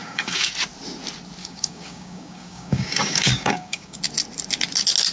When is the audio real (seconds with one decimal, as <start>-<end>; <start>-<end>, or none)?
0.5-1.4; 4.0-5.1